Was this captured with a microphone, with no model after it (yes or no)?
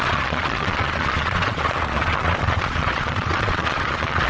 no